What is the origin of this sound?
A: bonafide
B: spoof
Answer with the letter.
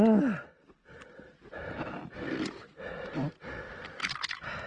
A